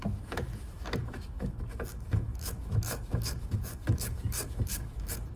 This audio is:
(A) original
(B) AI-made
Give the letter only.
B